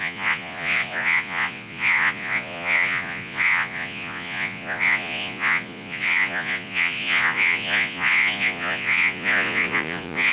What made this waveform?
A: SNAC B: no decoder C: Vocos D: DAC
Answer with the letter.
C